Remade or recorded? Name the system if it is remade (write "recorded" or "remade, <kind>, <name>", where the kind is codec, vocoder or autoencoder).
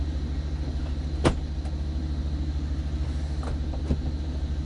recorded